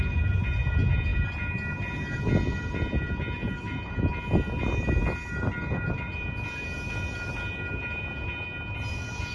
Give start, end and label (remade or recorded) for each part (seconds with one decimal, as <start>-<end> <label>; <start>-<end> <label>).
0.0-9.3 recorded